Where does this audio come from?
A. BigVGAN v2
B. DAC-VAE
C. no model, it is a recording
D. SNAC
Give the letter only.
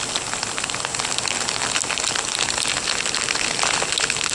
C